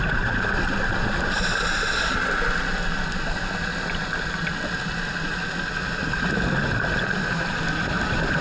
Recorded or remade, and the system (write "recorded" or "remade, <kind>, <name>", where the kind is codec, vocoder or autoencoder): recorded